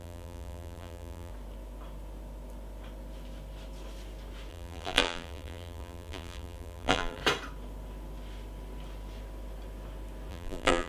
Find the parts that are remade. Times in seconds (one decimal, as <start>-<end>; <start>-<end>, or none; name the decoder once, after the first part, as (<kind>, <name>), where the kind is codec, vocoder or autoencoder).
0.0-1.3 (vocoder, BigVGAN v2); 4.5-7.2; 10.3-10.9